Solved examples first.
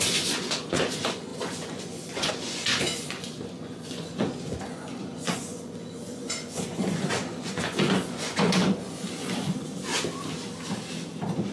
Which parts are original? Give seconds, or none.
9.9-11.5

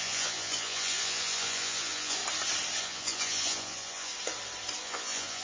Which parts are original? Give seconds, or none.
2.2-2.8; 4.1-4.8

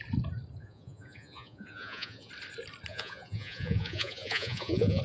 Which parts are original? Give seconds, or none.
0.0-0.6; 2.3-2.9